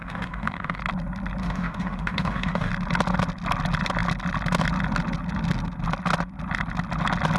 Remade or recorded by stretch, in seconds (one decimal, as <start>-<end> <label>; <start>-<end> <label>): 0.0-0.8 remade; 0.8-1.4 recorded; 1.4-2.7 remade; 2.7-7.4 recorded